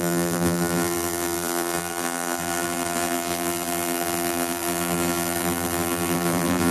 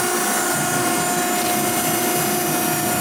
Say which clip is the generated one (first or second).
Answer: first